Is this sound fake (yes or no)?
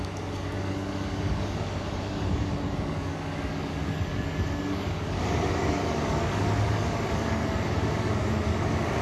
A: yes